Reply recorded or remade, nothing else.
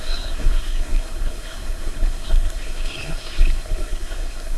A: remade